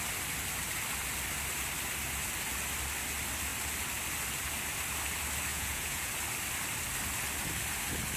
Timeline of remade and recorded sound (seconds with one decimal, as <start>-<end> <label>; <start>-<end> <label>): 0.0-5.5 recorded; 5.5-6.1 remade; 6.1-8.2 recorded